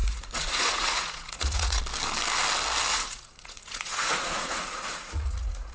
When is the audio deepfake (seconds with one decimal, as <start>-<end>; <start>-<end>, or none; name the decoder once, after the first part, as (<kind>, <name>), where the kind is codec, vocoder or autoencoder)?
0.0-1.8 (vocoder, Vocos); 2.9-5.7